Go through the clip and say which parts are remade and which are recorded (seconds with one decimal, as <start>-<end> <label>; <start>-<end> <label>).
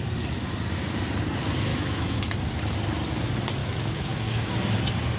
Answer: 0.0-1.7 recorded; 1.7-2.2 remade; 2.2-3.6 recorded; 3.6-4.5 remade; 4.5-5.2 recorded